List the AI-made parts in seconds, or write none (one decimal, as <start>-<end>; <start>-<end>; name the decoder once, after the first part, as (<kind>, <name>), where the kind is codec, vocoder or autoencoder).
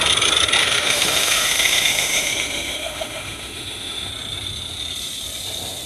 0.6-4.1 (autoencoder, DAC-VAE)